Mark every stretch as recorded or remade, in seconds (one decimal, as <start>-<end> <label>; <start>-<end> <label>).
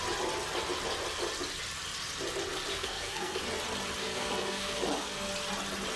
0.0-2.7 recorded; 2.7-3.4 remade; 3.4-4.0 recorded; 4.0-5.3 remade; 5.3-6.0 recorded